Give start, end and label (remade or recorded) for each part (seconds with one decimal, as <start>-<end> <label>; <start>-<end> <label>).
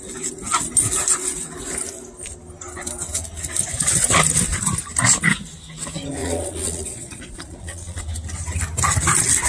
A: 0.0-6.2 recorded; 6.2-8.0 remade; 8.0-9.5 recorded